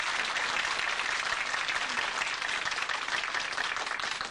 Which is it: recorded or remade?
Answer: recorded